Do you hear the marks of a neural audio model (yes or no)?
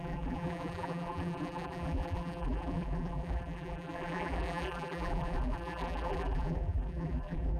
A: yes